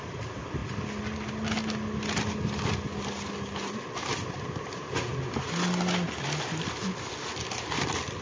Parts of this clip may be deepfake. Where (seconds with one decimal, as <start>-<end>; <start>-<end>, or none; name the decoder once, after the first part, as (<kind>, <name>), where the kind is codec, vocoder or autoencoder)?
none